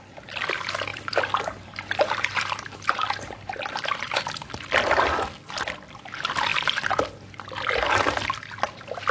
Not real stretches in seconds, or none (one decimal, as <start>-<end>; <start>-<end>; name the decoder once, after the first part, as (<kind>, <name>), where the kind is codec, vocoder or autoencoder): 0.9-4.2 (vocoder, BigVGAN v2)